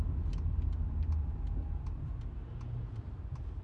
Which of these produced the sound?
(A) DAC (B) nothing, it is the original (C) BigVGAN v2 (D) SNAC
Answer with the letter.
B